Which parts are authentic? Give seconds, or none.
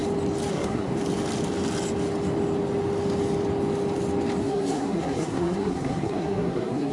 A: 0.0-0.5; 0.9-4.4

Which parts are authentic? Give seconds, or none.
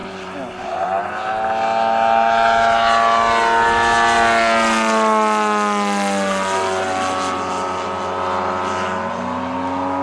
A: 0.0-10.0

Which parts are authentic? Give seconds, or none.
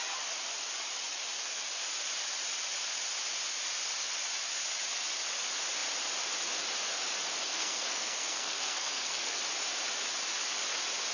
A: 0.0-7.4; 9.4-11.1